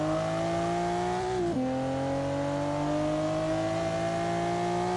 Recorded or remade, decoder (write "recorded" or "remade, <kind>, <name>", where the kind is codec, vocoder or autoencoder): recorded